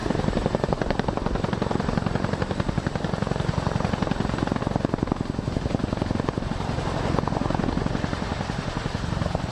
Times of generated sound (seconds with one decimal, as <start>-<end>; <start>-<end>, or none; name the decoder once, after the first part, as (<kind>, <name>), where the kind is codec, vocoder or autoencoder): 0.0-4.6 (vocoder, BigVGAN v2); 8.3-9.1